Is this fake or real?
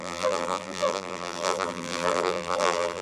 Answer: fake